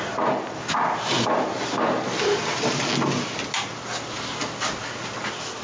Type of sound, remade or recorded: recorded